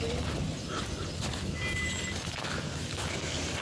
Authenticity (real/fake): real